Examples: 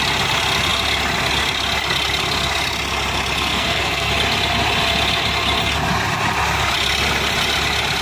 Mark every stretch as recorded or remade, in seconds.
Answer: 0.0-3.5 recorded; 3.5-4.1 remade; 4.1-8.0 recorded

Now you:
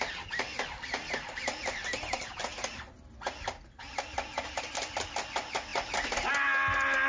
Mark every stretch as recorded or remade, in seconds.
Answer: 0.0-7.1 recorded